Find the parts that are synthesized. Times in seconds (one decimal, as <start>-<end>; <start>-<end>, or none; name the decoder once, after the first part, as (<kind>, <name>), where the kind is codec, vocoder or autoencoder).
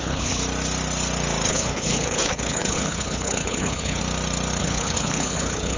0.0-0.4 (codec, HILCodec); 1.5-4.0; 4.6-5.8